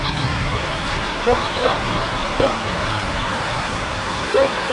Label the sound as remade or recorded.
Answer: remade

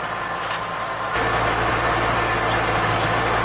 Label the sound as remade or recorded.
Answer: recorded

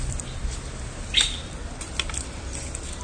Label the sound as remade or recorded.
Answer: recorded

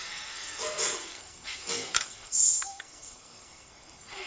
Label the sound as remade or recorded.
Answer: remade